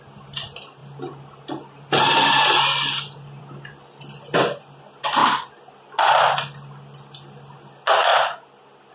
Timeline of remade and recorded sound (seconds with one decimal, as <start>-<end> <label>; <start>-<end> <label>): 0.0-8.9 recorded